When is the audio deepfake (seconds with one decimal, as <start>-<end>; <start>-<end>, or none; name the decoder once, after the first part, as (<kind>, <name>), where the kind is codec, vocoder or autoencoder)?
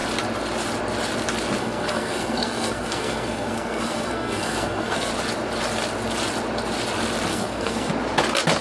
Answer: 1.6-5.1 (codec, SNAC); 7.3-7.9